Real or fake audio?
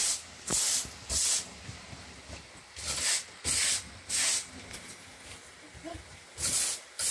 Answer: real